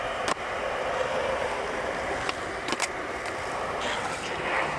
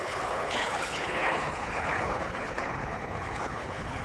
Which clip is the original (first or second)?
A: first